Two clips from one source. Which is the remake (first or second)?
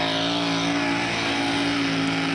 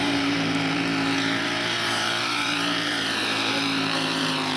second